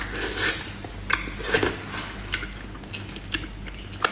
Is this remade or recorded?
recorded